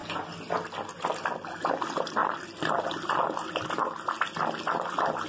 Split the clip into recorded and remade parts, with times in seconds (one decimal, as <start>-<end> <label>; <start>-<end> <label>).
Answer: 0.0-5.3 recorded